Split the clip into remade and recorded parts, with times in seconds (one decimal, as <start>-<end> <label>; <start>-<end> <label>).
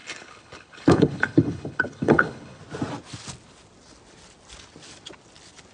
0.0-2.6 remade; 2.6-5.7 recorded